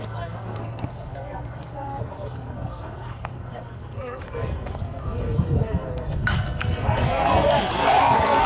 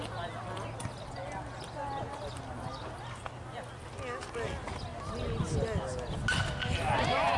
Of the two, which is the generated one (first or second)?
first